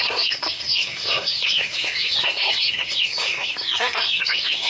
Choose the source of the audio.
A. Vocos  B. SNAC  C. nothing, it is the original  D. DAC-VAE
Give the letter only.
B